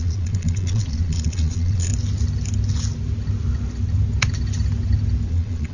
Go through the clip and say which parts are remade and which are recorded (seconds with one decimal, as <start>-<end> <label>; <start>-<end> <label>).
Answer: 0.0-1.9 remade; 1.9-5.3 recorded; 5.3-5.7 remade